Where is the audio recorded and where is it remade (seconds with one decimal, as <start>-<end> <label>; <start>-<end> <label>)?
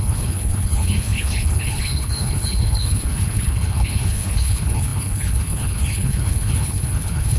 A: 0.0-7.4 remade